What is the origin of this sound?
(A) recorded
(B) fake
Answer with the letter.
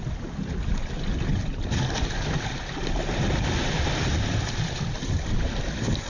A